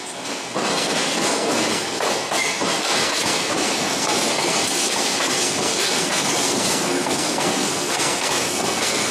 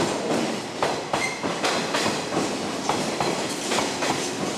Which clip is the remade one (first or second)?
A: first